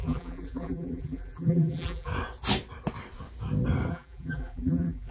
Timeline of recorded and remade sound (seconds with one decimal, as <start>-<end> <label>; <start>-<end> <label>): 0.0-2.1 remade; 2.1-3.9 recorded; 3.9-5.1 remade